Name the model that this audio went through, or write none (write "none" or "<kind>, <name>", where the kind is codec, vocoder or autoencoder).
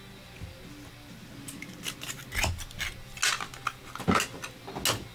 none